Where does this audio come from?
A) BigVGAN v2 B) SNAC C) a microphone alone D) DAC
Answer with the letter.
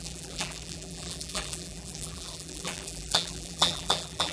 A